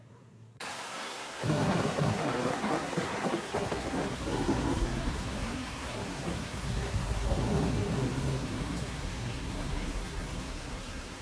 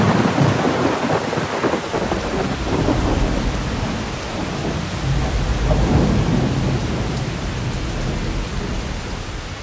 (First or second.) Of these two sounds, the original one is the second